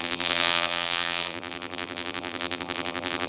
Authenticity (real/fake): fake